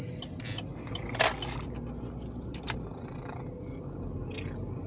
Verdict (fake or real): real